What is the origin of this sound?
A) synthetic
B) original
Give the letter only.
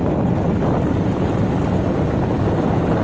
B